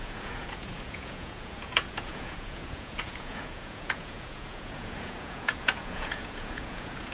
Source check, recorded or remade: remade